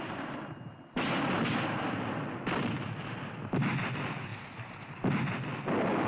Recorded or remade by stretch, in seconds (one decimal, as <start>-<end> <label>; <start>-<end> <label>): 0.0-6.1 recorded